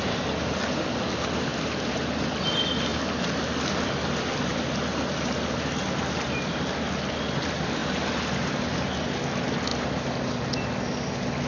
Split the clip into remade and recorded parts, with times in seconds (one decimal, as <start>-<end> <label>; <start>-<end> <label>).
0.0-11.5 recorded